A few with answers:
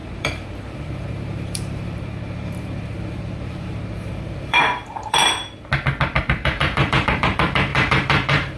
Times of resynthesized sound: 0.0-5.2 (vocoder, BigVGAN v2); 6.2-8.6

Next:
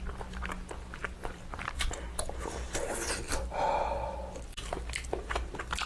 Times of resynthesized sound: none

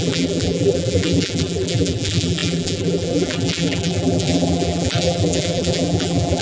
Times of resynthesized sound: 0.0-6.4 (vocoder, BigVGAN v2)

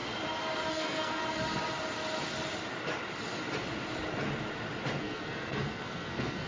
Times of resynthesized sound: 0.7-1.2 (codec, SNAC); 5.0-6.5